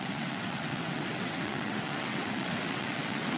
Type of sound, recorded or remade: remade